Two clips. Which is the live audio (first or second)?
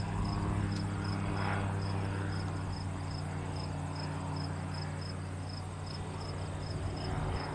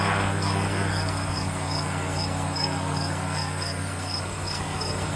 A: first